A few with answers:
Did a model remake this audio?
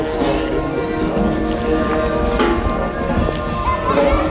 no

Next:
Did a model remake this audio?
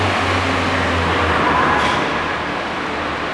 no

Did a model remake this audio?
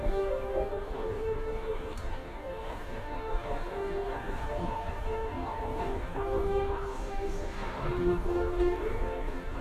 yes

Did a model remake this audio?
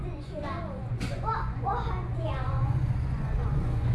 yes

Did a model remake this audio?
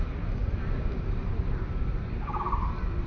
yes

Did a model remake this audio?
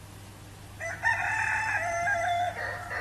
no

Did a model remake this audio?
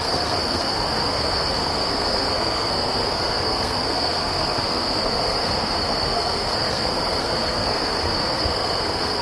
yes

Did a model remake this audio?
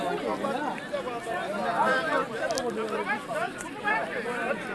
no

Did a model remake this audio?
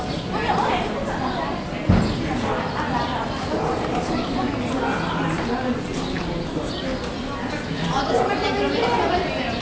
no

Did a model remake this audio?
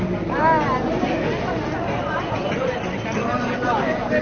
no